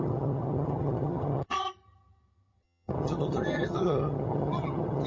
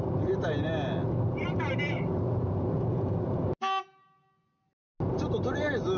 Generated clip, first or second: first